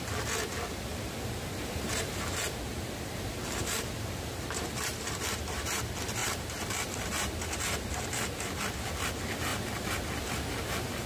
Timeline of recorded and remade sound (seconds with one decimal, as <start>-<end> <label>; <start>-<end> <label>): 0.0-0.9 recorded; 0.9-5.8 remade; 5.8-6.2 recorded; 6.2-8.2 remade; 8.2-11.1 recorded